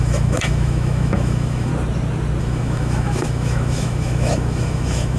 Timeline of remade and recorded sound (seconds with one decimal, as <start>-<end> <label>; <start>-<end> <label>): 0.0-1.7 remade; 1.7-2.4 recorded; 2.4-5.2 remade